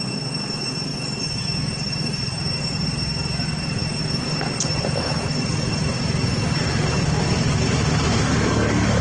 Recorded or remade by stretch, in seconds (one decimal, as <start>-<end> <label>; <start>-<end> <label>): 0.0-9.0 recorded